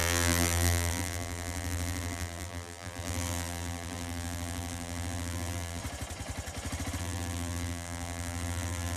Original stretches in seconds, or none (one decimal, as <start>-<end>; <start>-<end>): 5.8-7.0